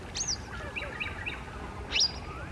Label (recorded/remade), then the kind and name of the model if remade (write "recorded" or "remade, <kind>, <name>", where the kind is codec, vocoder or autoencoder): recorded